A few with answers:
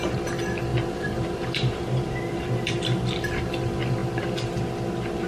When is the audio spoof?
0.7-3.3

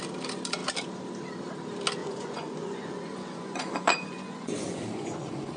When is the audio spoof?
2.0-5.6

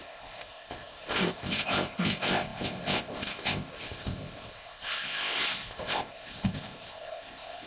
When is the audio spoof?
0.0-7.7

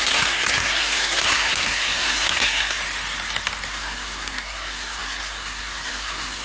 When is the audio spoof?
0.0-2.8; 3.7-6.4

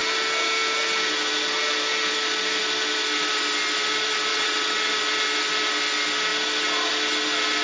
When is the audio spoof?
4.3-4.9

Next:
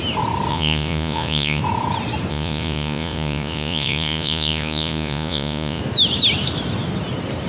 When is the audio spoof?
0.5-1.6; 2.3-5.8